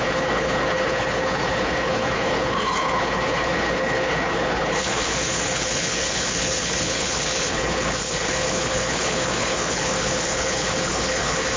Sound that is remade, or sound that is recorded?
remade